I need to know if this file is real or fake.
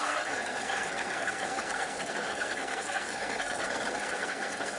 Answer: fake